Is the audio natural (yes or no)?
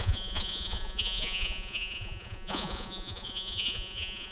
no